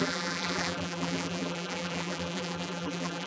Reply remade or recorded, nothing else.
remade